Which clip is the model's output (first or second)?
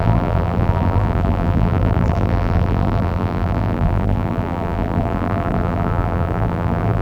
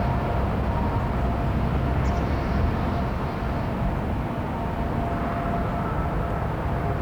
first